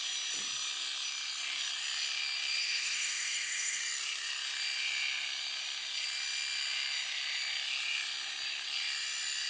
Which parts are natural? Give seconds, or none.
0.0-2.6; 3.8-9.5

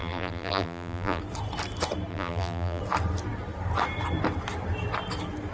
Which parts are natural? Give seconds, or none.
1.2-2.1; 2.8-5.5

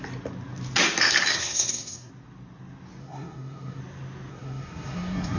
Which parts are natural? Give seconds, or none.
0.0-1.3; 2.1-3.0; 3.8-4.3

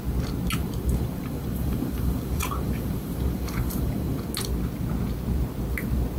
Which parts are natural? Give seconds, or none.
0.0-0.6; 4.3-6.2